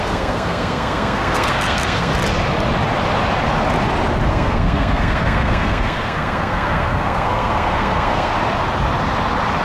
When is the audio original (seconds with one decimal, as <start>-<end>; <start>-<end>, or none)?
2.1-4.3; 8.3-9.6

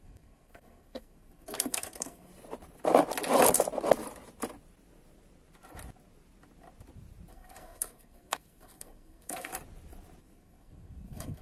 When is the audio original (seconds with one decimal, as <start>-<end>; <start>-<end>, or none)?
2.3-7.3; 9.5-10.2

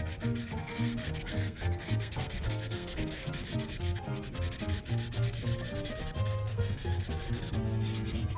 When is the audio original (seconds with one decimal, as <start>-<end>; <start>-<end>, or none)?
0.0-0.4; 3.3-6.5; 7.0-8.4

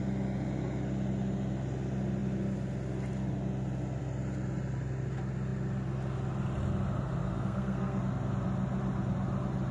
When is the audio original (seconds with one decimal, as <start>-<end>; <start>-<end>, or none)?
0.0-7.2; 8.0-9.7

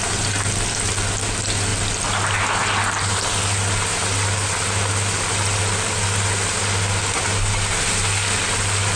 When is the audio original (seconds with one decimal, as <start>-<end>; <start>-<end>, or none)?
0.0-9.0

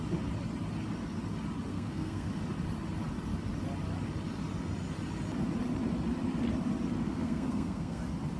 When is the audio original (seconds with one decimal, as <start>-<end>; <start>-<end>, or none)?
0.0-1.7; 2.3-7.0; 8.0-8.4

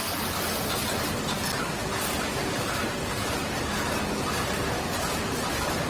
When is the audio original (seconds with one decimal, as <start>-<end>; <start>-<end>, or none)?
0.0-5.9

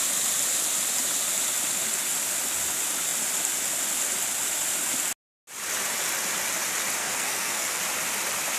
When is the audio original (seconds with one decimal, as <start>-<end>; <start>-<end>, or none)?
0.0-7.0; 7.8-8.6